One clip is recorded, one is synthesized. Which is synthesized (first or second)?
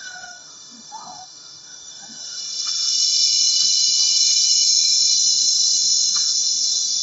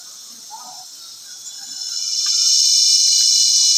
first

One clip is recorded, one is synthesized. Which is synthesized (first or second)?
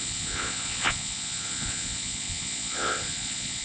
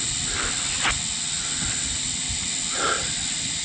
first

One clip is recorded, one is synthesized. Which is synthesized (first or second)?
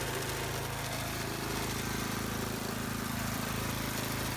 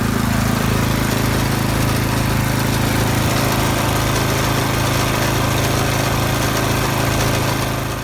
first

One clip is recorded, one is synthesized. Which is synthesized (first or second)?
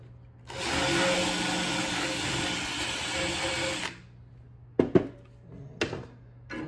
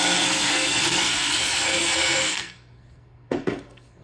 second